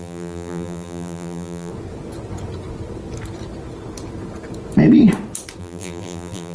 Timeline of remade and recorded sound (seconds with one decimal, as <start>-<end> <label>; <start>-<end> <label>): 0.0-1.7 remade; 1.7-5.6 recorded; 5.6-6.5 remade